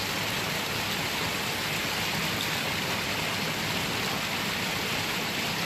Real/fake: real